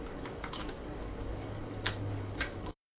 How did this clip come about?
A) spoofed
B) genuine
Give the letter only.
A